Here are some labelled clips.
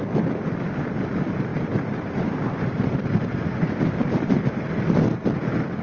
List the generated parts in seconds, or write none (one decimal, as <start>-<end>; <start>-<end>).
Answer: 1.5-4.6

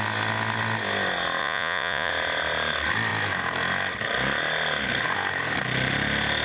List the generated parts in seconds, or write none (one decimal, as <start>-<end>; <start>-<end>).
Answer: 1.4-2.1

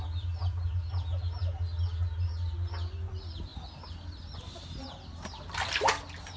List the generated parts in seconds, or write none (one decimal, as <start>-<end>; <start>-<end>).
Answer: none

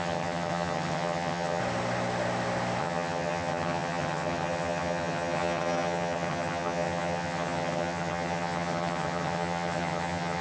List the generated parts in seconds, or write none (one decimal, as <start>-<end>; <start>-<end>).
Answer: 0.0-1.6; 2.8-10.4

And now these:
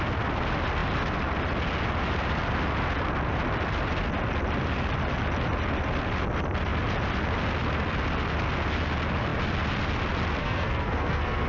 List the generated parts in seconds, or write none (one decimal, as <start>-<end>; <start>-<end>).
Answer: 10.4-11.5